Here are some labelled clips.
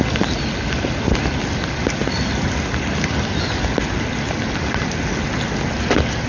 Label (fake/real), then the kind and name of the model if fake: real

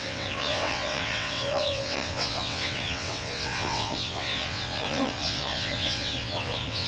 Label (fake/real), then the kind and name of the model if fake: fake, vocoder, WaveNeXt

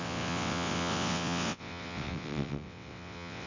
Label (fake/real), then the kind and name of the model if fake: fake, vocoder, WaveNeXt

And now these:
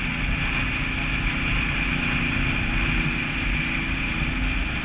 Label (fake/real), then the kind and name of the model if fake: real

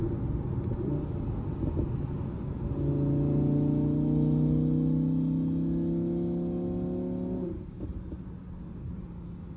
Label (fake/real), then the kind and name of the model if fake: real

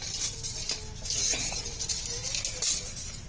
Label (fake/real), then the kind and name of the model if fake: real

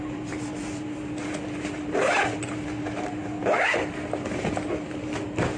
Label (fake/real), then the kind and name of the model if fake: real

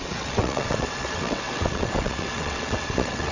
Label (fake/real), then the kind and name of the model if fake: fake, vocoder, WaveNeXt